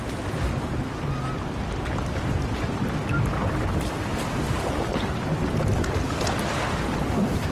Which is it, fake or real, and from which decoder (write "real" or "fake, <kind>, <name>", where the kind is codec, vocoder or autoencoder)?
real